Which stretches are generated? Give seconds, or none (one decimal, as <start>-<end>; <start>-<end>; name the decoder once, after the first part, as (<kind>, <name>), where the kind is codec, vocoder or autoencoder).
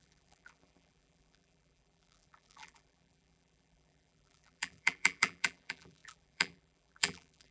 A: 0.0-7.5 (vocoder, BigVGAN v2)